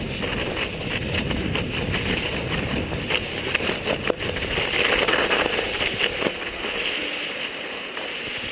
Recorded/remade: recorded